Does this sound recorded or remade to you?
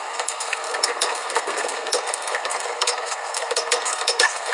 remade